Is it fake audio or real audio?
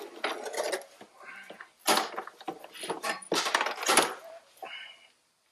real